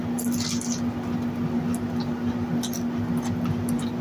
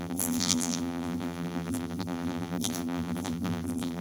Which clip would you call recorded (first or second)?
first